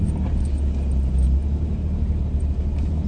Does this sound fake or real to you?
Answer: real